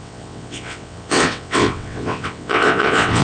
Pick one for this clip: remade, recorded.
remade